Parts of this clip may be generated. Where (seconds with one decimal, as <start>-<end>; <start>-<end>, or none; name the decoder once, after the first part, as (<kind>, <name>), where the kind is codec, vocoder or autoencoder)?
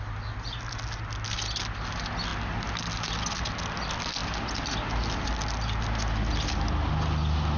none